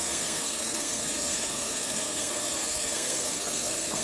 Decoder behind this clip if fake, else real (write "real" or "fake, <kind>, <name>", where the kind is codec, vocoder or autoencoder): fake, codec, SNAC